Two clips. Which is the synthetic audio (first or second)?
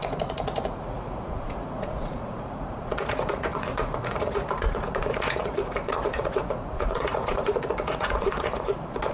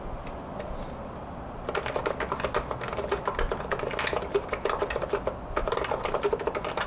first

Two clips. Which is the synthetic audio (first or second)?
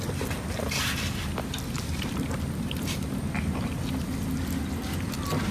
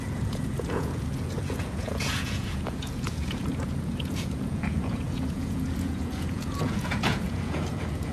second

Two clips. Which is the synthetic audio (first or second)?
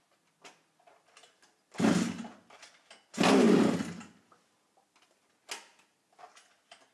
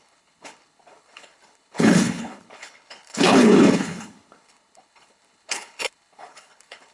second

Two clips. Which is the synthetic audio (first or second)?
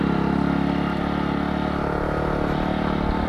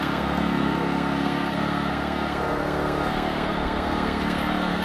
second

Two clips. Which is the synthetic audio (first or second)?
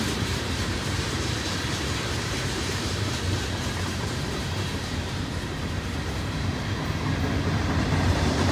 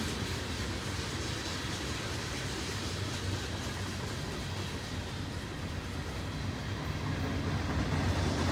first